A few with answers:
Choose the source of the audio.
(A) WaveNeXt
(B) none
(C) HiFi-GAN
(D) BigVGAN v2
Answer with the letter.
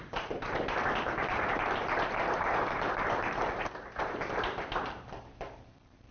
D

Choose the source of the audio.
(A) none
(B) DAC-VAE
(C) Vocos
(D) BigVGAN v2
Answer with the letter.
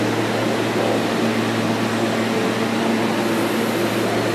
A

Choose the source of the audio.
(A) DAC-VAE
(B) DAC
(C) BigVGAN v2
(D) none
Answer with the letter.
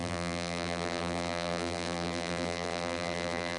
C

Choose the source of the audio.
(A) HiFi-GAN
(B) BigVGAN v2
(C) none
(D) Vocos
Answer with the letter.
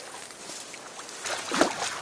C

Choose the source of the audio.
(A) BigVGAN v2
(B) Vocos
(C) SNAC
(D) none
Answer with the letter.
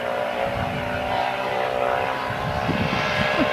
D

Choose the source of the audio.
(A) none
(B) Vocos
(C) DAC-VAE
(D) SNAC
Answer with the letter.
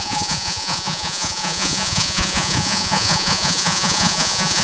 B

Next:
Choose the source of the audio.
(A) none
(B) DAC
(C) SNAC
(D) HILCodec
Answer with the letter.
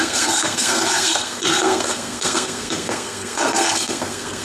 C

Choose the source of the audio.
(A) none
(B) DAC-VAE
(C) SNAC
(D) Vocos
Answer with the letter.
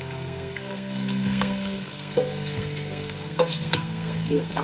C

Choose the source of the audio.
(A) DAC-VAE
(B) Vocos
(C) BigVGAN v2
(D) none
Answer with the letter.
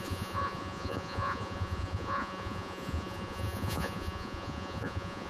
B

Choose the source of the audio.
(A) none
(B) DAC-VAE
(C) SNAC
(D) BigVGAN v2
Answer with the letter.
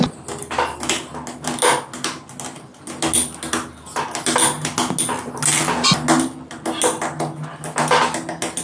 A